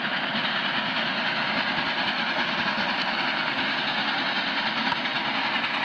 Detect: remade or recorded recorded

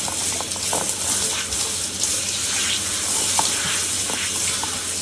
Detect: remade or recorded recorded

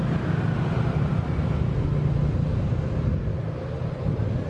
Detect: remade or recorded recorded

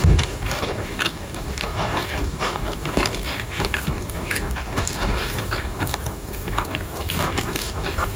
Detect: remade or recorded remade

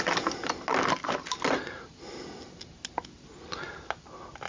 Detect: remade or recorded recorded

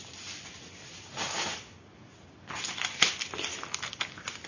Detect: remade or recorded recorded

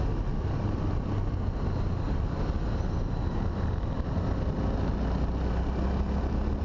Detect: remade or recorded recorded